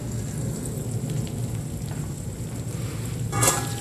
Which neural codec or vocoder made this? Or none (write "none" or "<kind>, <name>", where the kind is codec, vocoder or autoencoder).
none